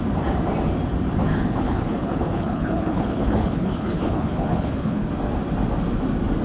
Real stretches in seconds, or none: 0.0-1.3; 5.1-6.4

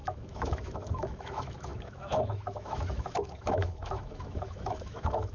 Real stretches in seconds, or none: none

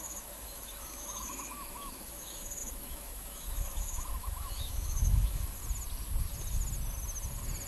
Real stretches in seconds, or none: 5.6-7.7

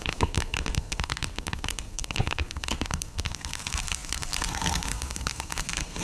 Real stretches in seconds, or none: none

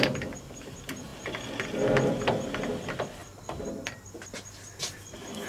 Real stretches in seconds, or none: 0.0-5.5

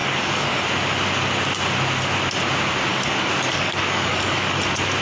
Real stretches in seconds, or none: 0.6-2.9; 4.6-5.0